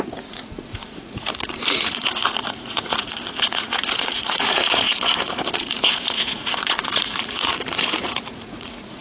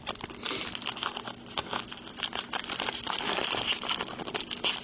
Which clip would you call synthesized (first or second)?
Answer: first